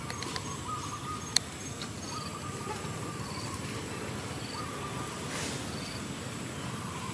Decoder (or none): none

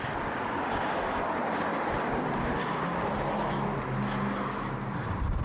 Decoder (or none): none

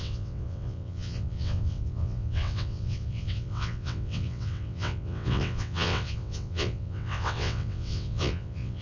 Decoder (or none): vocoder, WaveNeXt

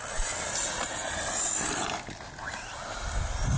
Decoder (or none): none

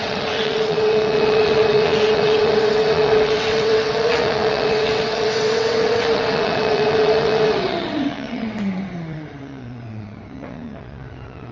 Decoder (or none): vocoder, WaveNeXt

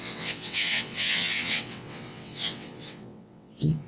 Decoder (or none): vocoder, WaveNeXt